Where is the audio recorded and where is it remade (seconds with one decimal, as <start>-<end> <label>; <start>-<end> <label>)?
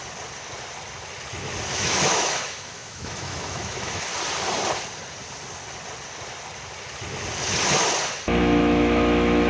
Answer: 0.0-1.7 recorded; 1.7-4.1 remade; 4.1-8.4 recorded; 8.4-9.5 remade